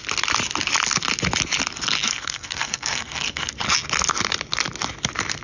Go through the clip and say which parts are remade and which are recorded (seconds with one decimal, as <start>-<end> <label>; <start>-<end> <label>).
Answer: 0.0-2.1 recorded; 2.1-3.5 remade; 3.5-5.4 recorded